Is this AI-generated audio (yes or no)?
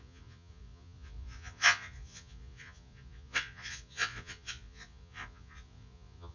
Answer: yes